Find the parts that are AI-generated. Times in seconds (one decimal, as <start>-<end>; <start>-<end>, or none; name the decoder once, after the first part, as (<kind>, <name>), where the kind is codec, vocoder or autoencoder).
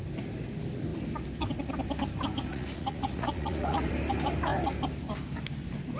2.5-3.9 (vocoder, Vocos)